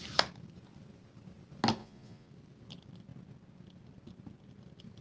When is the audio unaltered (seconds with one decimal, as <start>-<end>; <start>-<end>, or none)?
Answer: 0.0-1.8; 2.3-5.0